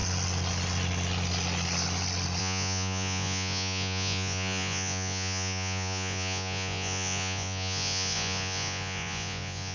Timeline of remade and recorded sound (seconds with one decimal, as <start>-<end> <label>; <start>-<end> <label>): 0.0-2.4 recorded; 2.4-9.7 remade